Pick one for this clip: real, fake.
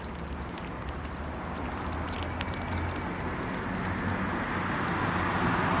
real